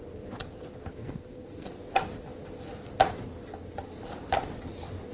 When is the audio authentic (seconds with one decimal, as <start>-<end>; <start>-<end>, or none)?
0.0-0.9; 1.7-5.1